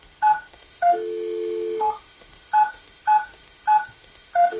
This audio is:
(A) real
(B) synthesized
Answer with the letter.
B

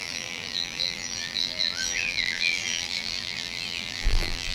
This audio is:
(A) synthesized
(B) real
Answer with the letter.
A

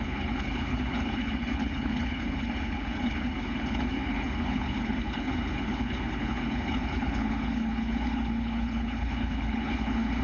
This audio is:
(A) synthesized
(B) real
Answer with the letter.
A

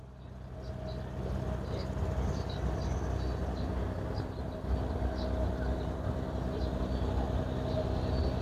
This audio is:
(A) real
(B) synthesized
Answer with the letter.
A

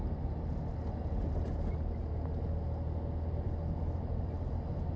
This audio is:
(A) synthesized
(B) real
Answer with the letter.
B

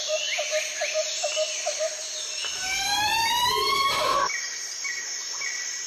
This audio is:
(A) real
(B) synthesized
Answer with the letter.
B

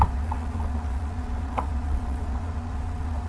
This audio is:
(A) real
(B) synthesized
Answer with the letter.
B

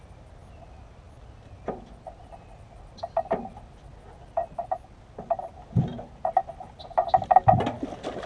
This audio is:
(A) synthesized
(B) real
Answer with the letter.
B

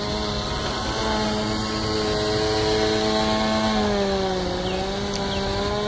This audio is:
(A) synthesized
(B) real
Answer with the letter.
B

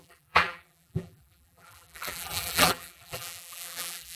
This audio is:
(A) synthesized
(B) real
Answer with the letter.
A